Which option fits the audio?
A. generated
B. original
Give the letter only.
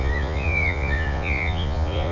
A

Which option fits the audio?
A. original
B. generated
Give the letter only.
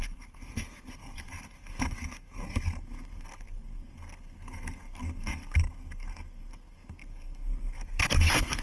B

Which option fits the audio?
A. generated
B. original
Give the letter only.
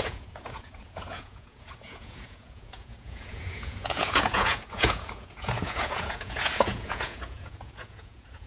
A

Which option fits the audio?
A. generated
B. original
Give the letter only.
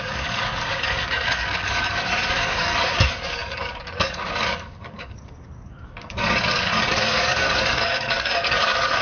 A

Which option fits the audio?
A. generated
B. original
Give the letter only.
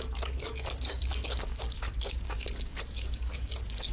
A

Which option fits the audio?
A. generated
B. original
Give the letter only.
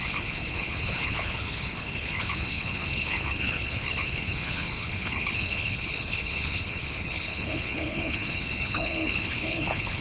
A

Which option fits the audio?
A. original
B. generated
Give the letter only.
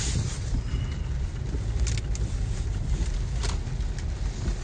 A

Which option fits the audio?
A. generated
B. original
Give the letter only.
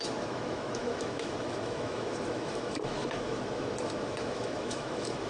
A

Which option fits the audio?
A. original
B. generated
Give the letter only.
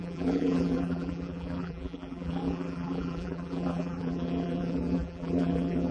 B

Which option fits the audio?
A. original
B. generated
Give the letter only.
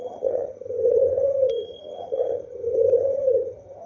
B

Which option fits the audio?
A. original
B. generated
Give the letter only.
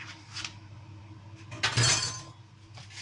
A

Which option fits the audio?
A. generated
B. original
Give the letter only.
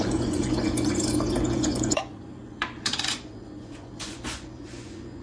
A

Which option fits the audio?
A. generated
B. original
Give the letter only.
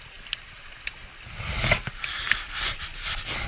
B